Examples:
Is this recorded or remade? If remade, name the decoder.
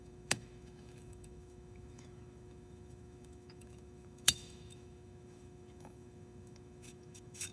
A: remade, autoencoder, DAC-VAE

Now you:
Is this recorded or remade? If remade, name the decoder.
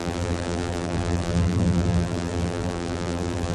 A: remade, vocoder, BigVGAN v2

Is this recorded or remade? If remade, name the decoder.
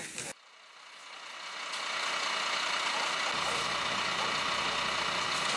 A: recorded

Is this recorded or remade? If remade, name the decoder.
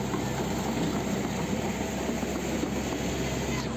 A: recorded